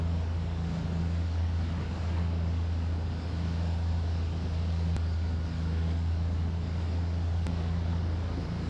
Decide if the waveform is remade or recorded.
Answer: remade